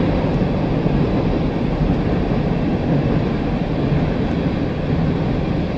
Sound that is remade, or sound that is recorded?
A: recorded